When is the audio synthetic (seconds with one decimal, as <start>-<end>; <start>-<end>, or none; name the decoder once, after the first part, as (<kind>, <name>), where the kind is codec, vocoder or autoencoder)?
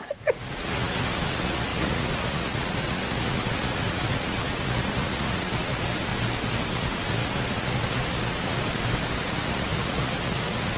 0.0-6.1 (vocoder, Vocos); 6.7-8.6; 9.2-10.8